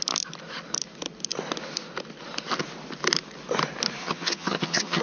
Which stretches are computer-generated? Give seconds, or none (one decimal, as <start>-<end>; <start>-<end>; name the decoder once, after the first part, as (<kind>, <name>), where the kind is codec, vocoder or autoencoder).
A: 4.0-5.0 (vocoder, HiFi-GAN)